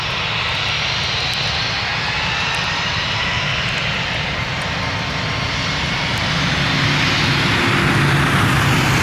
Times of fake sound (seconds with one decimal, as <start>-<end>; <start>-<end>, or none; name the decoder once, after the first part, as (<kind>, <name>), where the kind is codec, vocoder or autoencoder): none